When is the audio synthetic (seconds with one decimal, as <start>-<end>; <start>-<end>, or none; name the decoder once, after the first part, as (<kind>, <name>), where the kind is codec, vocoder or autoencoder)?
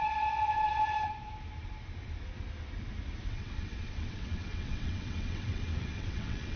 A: 0.0-1.2 (vocoder, WaveNeXt); 3.3-6.6